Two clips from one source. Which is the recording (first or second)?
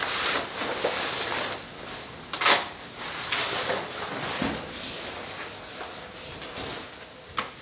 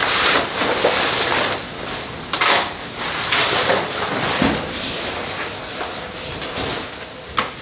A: first